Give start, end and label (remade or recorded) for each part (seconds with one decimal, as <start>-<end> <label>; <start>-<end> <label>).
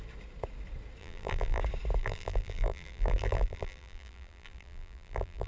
0.0-1.0 recorded; 1.0-1.6 remade; 1.6-2.0 recorded; 2.0-5.5 remade